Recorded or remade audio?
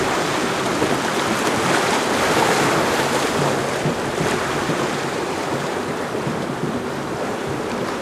remade